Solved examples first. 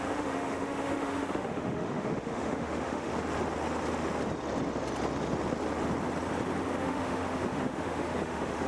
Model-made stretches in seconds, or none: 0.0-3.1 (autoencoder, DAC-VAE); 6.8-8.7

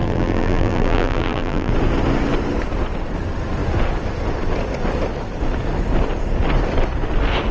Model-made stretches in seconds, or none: 0.0-1.7 (vocoder, BigVGAN v2)

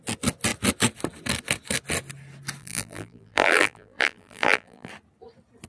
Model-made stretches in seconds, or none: 2.6-4.9 (vocoder, BigVGAN v2)

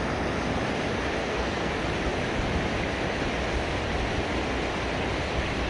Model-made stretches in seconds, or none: 1.2-1.7 (codec, SNAC)

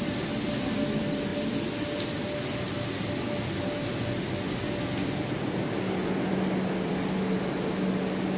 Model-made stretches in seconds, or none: none

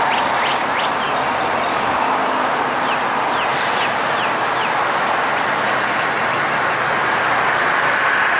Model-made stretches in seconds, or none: 1.7-2.6 (codec, DAC)